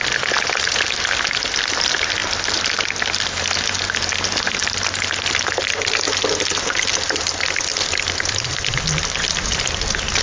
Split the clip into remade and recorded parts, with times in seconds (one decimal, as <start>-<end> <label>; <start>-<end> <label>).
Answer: 0.0-10.2 recorded